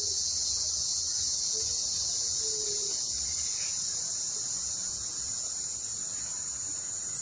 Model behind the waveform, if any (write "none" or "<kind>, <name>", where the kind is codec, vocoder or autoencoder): vocoder, Vocos